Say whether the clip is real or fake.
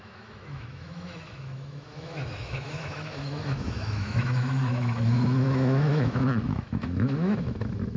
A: fake